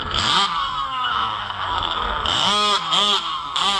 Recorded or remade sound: remade